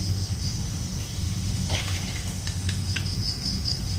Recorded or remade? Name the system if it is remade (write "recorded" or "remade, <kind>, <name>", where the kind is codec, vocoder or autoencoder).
remade, autoencoder, DAC-VAE